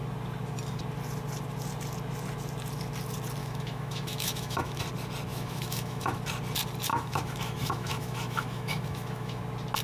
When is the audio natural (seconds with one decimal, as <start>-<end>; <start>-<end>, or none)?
0.0-3.4; 4.8-5.3; 6.2-6.9; 9.4-9.8